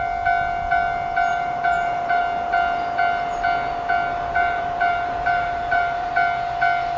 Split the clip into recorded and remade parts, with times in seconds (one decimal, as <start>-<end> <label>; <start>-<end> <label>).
0.0-1.3 recorded; 1.3-2.2 remade; 2.2-4.3 recorded; 4.3-6.1 remade; 6.1-7.0 recorded